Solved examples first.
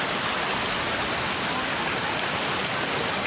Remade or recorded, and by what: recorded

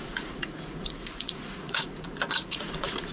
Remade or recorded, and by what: remade, vocoder, Vocos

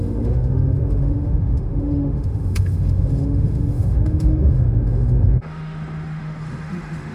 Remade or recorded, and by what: remade, autoencoder, DAC-VAE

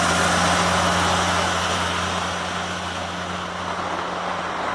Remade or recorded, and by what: recorded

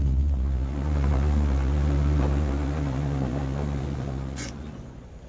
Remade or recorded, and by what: remade, vocoder, Vocos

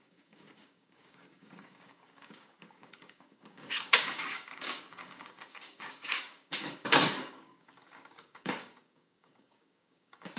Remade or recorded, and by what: remade, codec, DAC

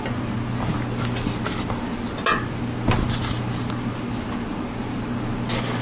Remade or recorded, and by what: recorded